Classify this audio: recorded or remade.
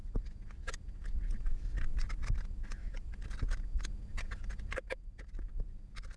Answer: recorded